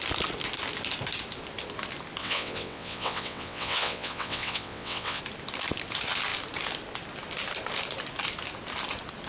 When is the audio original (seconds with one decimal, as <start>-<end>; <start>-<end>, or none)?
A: 0.0-2.2; 5.2-9.3